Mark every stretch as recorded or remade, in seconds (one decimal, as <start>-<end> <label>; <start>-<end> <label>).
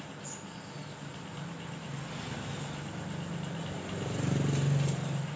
0.0-5.4 recorded